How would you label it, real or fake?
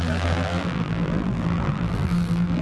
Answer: fake